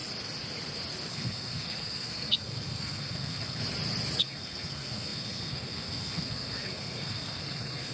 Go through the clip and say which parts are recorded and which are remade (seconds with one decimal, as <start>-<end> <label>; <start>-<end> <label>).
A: 0.0-1.1 recorded; 1.1-3.6 remade; 3.6-4.2 recorded; 4.2-7.9 remade